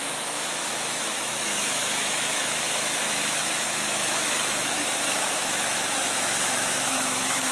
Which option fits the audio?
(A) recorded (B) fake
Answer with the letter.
B